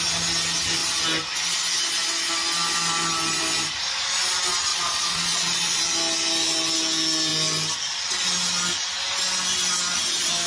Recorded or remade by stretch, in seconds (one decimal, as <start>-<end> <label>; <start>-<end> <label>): 0.0-4.7 recorded; 4.7-5.8 remade; 5.8-10.5 recorded